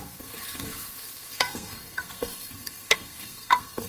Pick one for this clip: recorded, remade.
remade